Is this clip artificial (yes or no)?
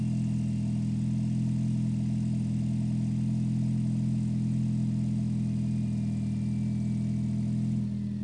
no